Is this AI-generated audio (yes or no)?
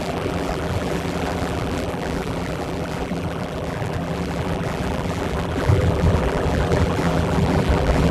yes